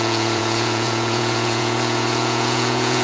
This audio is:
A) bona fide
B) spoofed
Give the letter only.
B